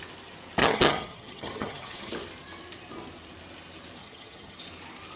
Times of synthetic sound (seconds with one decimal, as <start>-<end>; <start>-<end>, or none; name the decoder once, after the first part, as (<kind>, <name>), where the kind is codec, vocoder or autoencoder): 0.6-2.1 (vocoder, HiFi-GAN); 4.0-4.6